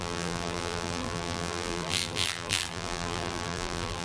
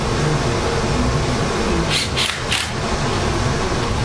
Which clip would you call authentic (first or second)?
second